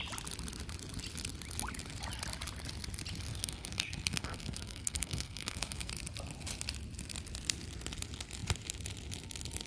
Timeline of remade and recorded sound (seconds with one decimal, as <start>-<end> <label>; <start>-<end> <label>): 0.0-3.3 recorded; 3.3-5.9 remade; 5.9-9.7 recorded